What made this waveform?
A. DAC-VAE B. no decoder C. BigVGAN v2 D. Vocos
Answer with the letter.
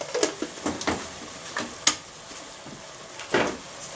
B